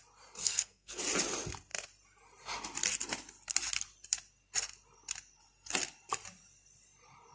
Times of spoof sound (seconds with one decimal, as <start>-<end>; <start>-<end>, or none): 0.4-1.0